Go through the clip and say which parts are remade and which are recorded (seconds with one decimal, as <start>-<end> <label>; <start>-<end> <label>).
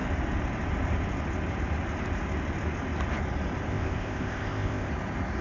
0.0-3.7 recorded; 3.7-4.9 remade; 4.9-5.4 recorded